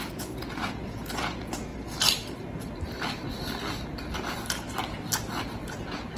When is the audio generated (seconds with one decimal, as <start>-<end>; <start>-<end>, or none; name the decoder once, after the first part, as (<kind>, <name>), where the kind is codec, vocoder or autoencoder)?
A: 0.0-1.7 (vocoder, Vocos); 5.4-6.2